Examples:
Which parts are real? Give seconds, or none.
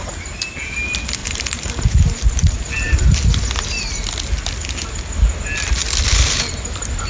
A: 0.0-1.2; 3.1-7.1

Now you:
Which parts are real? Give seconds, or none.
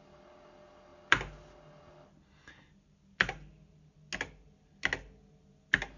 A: 0.0-6.0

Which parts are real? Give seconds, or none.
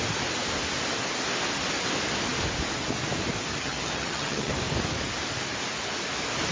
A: 0.0-3.5; 4.5-6.5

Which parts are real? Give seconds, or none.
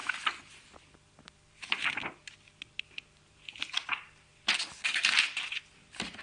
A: 0.0-6.2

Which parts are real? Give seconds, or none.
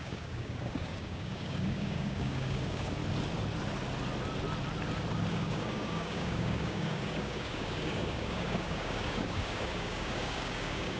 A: 3.0-5.3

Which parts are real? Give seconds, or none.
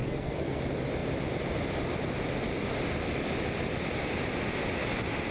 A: 0.6-5.3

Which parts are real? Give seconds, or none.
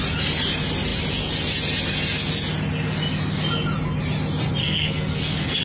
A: 0.0-4.6